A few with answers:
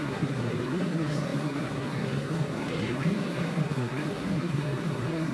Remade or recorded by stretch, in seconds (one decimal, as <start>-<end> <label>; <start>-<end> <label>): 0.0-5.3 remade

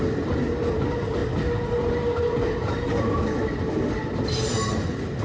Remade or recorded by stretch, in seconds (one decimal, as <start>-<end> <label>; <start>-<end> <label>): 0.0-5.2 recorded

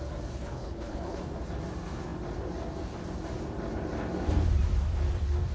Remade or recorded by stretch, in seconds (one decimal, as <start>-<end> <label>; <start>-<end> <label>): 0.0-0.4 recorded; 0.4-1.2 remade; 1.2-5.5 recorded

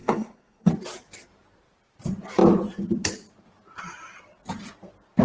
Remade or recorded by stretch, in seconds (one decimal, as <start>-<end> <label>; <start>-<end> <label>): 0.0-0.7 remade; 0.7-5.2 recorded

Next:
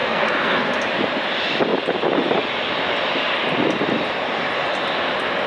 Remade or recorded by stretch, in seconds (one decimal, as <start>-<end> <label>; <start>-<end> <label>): 0.0-0.7 remade; 0.7-5.5 recorded

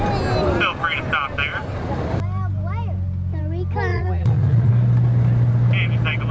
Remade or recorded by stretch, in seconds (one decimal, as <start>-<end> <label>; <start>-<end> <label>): 0.0-3.9 recorded; 3.9-4.7 remade; 4.7-6.3 recorded

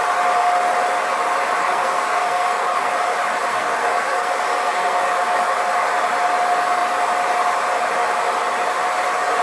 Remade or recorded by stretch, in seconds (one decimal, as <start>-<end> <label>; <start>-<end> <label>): 0.0-1.6 recorded; 1.6-2.9 remade; 2.9-3.5 recorded; 3.5-5.0 remade; 5.0-9.4 recorded

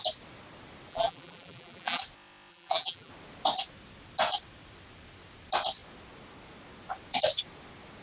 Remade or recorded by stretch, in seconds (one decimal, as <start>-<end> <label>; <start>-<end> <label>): 0.0-0.9 recorded; 0.9-2.0 remade; 2.0-2.5 recorded; 2.5-3.1 remade; 3.1-8.0 recorded